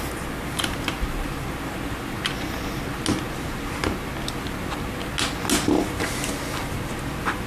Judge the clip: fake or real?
real